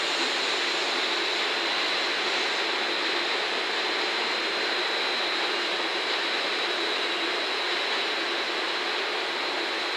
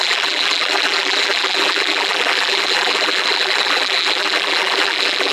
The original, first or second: first